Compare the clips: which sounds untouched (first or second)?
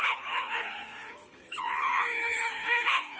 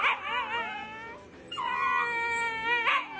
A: second